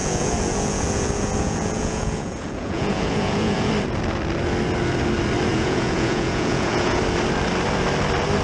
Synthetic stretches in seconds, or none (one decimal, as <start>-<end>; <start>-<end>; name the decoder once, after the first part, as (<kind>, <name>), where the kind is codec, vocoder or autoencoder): 0.0-3.7 (vocoder, Vocos); 5.5-7.0

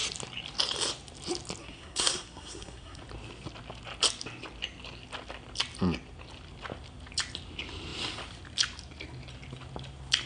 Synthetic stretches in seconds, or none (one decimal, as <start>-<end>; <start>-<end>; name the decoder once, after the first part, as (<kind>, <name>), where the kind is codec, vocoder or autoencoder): 1.6-3.0 (codec, SNAC)

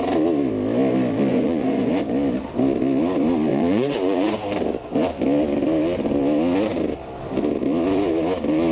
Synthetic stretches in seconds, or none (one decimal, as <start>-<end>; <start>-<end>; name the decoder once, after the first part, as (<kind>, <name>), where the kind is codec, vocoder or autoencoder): 1.3-1.9 (vocoder, Vocos); 3.5-4.3